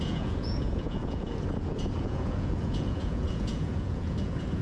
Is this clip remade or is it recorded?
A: remade